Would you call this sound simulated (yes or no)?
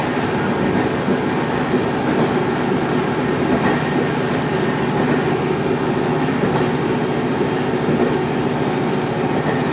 no